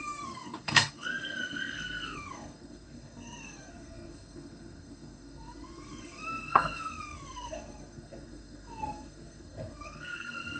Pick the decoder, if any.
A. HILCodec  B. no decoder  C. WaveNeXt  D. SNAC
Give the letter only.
D